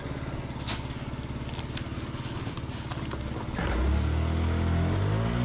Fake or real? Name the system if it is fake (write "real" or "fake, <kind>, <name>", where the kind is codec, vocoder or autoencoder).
real